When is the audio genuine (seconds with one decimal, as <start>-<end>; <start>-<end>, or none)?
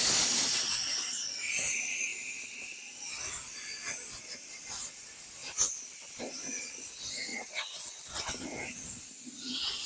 0.0-7.3; 8.2-9.9